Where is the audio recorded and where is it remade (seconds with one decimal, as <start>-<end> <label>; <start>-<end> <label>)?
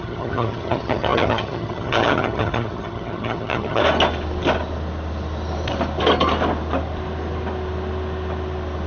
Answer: 0.0-3.8 remade; 3.8-8.9 recorded